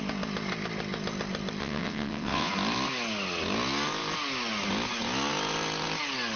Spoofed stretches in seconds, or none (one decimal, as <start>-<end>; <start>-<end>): 1.6-2.5